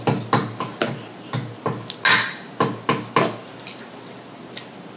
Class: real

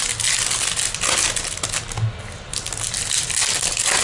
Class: real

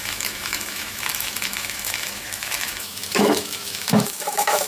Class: fake